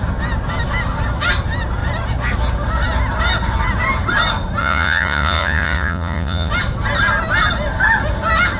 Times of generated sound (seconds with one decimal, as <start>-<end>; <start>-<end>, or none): 4.6-6.5